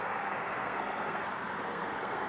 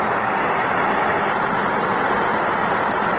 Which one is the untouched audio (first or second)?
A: second